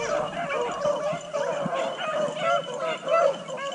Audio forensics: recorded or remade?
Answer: recorded